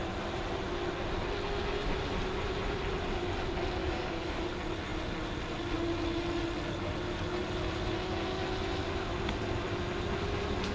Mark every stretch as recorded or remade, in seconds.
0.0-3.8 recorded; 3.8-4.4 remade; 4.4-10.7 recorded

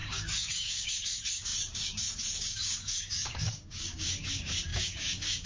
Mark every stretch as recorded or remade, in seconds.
0.0-5.5 remade

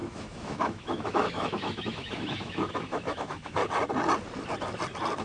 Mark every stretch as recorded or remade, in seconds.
0.0-3.6 remade; 3.6-5.2 recorded

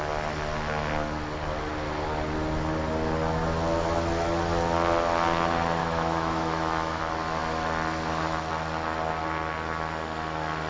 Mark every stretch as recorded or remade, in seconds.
0.0-5.8 recorded; 5.8-7.0 remade; 7.0-10.7 recorded

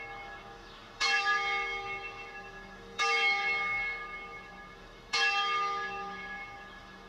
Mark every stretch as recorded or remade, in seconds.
0.0-7.1 remade

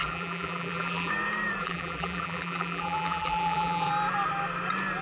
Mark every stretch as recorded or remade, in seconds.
0.0-1.1 remade; 1.1-1.6 recorded; 1.6-3.9 remade; 3.9-5.0 recorded